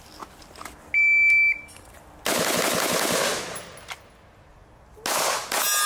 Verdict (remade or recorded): recorded